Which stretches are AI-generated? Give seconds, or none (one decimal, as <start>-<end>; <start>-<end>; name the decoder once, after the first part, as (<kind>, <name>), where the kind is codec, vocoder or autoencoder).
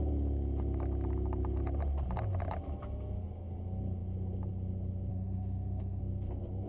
5.1-6.0 (autoencoder, DAC-VAE)